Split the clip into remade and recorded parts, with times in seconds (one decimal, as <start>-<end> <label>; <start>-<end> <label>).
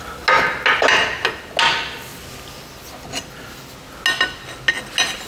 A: 0.0-5.3 recorded